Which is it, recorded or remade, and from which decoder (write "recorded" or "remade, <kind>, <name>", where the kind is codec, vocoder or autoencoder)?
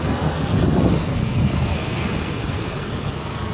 remade, codec, SNAC